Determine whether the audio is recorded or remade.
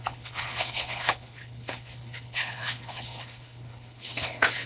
remade